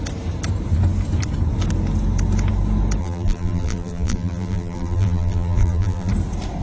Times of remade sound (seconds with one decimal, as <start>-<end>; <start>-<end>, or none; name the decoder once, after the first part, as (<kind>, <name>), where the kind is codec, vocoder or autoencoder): 3.0-6.1 (vocoder, BigVGAN v2)